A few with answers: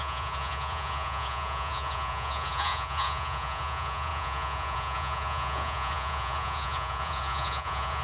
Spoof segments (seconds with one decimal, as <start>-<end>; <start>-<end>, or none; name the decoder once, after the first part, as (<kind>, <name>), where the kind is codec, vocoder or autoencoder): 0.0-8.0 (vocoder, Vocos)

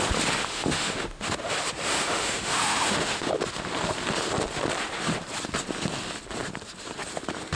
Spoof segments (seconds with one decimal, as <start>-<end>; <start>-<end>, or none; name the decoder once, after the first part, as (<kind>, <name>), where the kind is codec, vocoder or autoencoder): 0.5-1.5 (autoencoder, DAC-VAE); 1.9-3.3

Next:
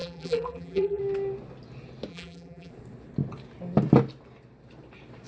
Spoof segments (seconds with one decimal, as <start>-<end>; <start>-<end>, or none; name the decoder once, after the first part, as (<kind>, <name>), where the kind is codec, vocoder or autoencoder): 0.0-1.0 (vocoder, BigVGAN v2); 2.1-2.7